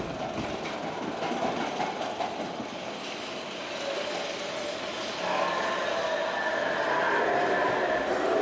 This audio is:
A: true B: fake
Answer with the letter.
A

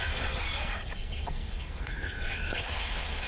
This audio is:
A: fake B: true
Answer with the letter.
A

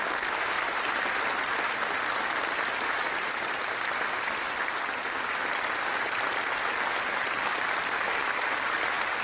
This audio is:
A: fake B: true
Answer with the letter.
B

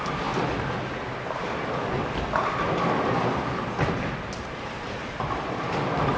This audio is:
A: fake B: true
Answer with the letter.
B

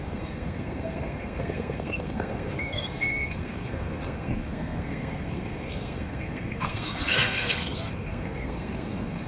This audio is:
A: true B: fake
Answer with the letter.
B